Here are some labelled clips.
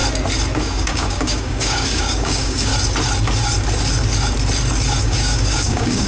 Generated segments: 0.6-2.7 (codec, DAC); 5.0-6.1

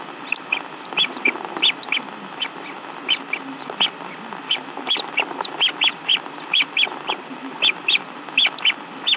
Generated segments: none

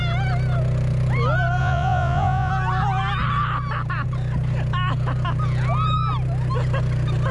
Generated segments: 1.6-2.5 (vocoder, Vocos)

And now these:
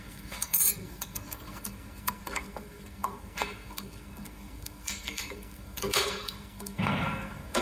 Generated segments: 0.0-7.6 (codec, SNAC)

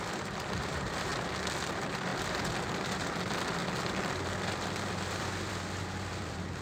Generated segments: 0.0-1.1 (vocoder, BigVGAN v2); 1.7-6.6

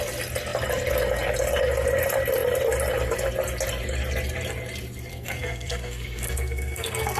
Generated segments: 5.1-7.2 (codec, SNAC)

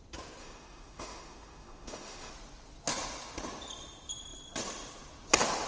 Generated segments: 0.4-2.3 (autoencoder, DAC-VAE)

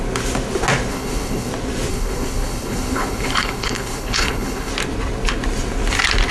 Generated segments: 0.9-1.5 (codec, HILCodec); 1.9-4.7